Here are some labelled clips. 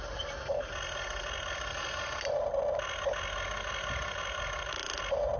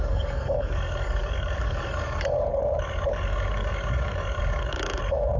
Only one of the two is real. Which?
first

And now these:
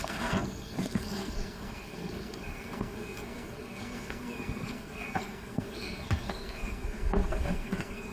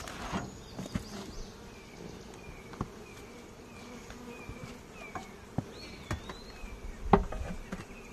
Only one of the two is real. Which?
second